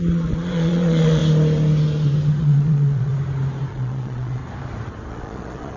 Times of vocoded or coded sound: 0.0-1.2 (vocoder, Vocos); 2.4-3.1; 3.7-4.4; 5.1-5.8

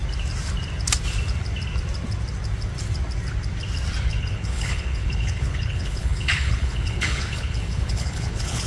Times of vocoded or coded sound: 4.2-8.7 (codec, HILCodec)

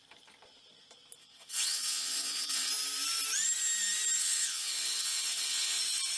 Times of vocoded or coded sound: 1.2-2.7 (vocoder, WaveNeXt); 4.2-5.8

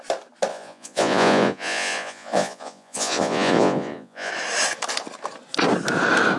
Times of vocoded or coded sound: 0.5-4.3 (vocoder, Vocos)

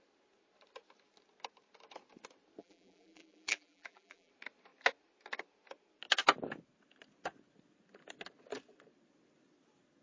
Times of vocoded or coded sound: 2.6-4.3 (vocoder, BigVGAN v2)

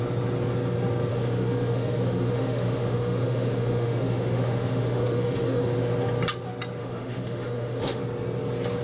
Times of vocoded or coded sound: 1.1-5.6 (autoencoder, DAC-VAE); 6.8-8.0